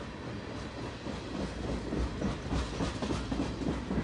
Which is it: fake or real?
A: real